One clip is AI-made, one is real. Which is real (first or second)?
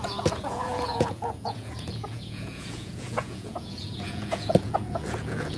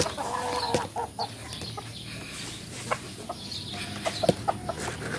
second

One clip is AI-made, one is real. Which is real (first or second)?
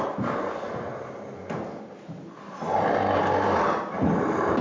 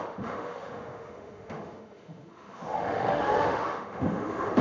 first